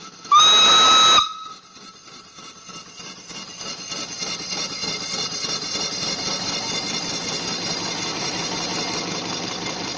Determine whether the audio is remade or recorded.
recorded